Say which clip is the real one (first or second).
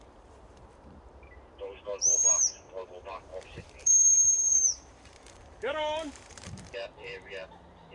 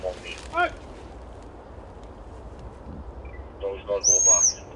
second